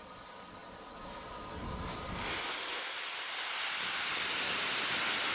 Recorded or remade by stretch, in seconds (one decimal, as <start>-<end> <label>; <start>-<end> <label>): 0.0-5.3 recorded